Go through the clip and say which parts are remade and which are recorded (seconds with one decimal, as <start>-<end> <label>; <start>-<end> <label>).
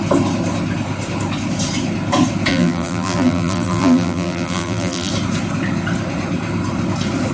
0.0-2.5 recorded; 2.5-5.1 remade; 5.1-7.3 recorded